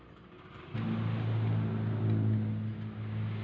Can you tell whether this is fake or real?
real